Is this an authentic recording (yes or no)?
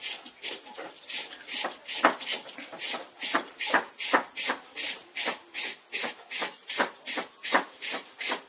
yes